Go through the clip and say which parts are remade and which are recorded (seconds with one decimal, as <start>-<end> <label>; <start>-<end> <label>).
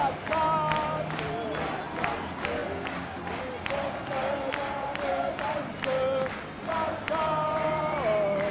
0.0-8.5 recorded